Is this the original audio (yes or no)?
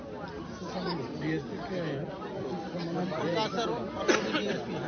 yes